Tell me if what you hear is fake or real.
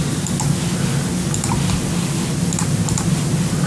real